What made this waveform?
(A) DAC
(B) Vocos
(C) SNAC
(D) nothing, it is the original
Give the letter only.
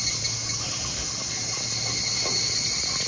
D